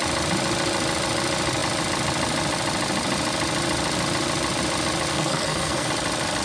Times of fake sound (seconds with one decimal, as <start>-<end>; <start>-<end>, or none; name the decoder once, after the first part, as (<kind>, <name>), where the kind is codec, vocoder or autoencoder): 5.1-5.9 (codec, SNAC)